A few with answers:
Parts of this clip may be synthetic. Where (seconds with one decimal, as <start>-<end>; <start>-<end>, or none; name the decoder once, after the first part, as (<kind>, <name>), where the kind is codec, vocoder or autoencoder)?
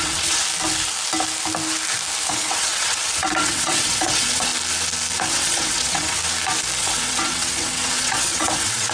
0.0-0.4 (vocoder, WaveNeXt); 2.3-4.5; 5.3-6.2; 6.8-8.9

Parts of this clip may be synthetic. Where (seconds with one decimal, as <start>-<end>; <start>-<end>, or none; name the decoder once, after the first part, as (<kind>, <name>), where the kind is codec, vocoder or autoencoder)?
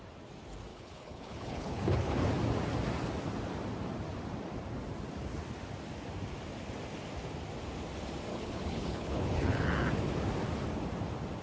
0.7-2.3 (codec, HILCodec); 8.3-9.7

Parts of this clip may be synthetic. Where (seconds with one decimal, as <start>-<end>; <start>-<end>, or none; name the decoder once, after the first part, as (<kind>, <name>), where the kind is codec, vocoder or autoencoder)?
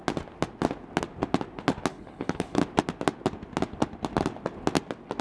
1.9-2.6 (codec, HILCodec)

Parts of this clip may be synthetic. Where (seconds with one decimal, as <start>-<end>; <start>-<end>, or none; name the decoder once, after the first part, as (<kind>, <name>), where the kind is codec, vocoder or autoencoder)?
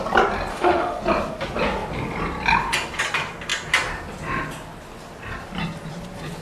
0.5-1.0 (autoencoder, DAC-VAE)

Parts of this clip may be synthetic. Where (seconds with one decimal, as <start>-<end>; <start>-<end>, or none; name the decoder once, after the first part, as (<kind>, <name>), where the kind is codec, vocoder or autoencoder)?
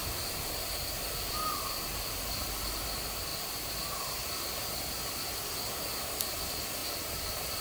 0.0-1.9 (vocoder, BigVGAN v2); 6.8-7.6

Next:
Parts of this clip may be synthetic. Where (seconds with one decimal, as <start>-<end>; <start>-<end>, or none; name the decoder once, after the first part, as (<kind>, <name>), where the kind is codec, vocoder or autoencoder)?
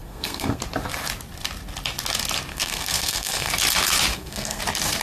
0.0-0.6 (codec, SNAC); 2.5-3.5; 4.1-4.6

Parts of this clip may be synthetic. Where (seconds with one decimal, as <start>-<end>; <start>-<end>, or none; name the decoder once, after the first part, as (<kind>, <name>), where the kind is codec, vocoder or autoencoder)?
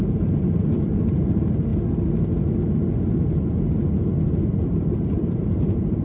0.0-1.7 (vocoder, BigVGAN v2); 4.5-6.0